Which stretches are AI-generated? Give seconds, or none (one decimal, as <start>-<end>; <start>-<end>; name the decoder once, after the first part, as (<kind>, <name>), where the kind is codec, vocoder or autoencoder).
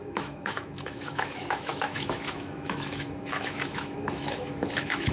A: 0.0-5.1 (autoencoder, DAC-VAE)